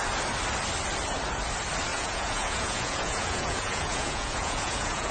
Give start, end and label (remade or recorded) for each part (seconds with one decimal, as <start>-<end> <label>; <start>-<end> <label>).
0.0-1.9 recorded; 1.9-5.1 remade